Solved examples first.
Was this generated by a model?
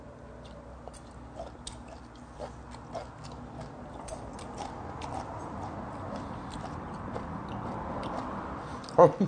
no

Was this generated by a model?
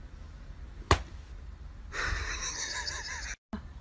no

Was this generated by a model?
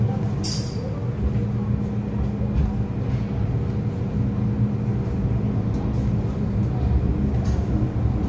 no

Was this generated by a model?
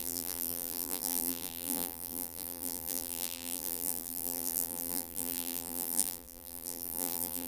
yes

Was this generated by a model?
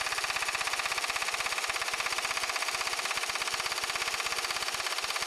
no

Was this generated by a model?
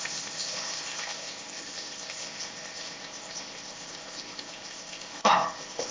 yes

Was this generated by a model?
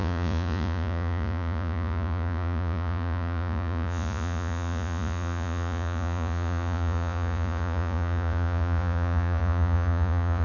yes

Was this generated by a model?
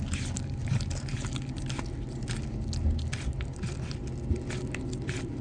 no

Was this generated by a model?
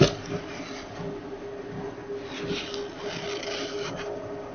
no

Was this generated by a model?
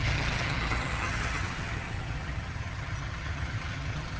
yes